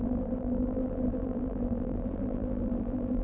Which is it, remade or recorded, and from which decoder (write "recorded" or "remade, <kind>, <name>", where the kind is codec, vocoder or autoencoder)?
remade, vocoder, BigVGAN v2